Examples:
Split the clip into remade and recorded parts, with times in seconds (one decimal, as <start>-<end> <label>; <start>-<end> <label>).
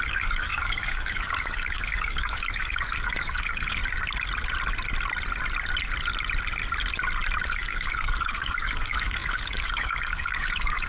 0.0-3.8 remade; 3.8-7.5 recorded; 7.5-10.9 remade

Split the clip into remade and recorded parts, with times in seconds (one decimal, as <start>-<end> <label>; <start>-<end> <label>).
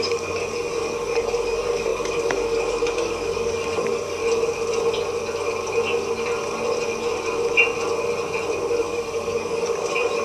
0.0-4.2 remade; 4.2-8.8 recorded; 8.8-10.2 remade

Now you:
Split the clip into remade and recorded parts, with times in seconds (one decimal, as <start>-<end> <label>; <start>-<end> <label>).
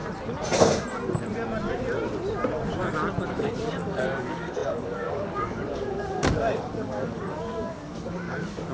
0.0-3.3 recorded; 3.3-8.7 remade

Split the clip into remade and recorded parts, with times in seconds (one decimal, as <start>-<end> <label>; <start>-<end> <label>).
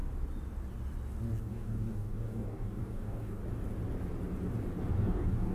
0.0-1.4 recorded; 1.4-3.4 remade; 3.4-4.9 recorded; 4.9-5.5 remade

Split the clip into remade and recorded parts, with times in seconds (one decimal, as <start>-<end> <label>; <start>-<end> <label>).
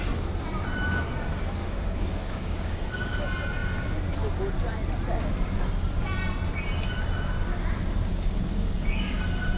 0.0-1.6 recorded; 1.6-3.2 remade; 3.2-8.1 recorded; 8.1-9.2 remade; 9.2-9.6 recorded